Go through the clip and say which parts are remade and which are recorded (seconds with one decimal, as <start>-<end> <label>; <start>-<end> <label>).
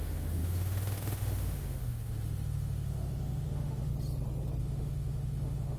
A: 0.0-3.9 remade; 3.9-4.6 recorded; 4.6-5.8 remade